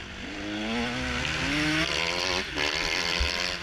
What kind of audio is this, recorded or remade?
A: recorded